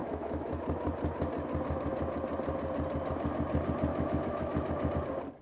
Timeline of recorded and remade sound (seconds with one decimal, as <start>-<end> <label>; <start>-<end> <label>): 0.0-0.6 remade; 0.6-3.9 recorded; 3.9-4.9 remade; 4.9-5.4 recorded

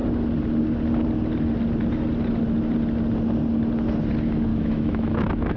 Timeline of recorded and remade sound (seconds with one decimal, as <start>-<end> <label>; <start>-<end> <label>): 0.0-4.5 recorded; 4.5-5.6 remade

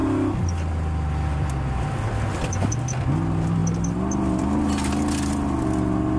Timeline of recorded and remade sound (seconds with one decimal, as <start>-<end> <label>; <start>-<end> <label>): 0.0-6.2 recorded

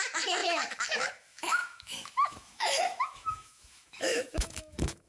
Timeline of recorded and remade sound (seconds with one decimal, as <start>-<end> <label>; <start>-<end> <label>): 0.0-5.1 remade

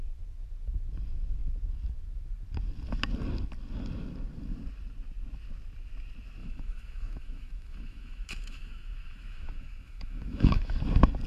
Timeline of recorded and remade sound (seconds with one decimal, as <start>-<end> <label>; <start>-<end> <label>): 0.0-6.4 recorded; 6.4-10.8 remade; 10.8-11.3 recorded